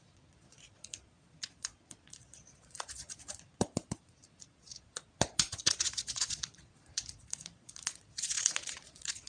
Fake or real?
fake